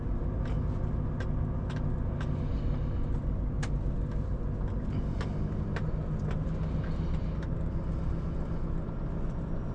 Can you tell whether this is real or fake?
real